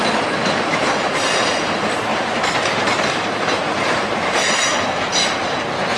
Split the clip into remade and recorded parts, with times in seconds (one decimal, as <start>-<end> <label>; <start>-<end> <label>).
0.0-2.1 recorded; 2.1-4.5 remade; 4.5-6.0 recorded